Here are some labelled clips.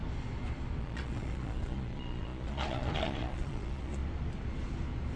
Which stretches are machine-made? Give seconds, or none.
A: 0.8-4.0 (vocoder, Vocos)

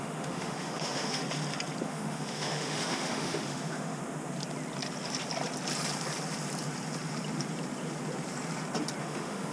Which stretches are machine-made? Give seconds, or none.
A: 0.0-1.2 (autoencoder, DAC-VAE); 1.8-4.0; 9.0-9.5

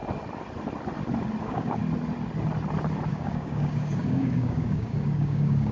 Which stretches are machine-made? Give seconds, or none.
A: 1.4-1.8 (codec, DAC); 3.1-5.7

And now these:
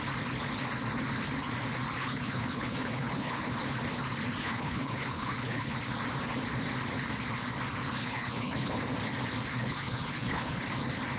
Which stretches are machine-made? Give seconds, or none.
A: 2.0-3.4 (codec, HILCodec); 4.4-5.8; 8.0-8.8; 9.5-10.6

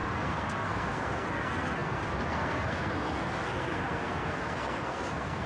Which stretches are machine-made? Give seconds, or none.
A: 0.0-5.5 (codec, SNAC)